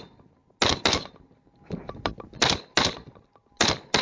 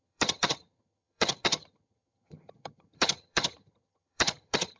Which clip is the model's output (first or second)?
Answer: second